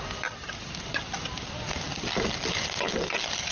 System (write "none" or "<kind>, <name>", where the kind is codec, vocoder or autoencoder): none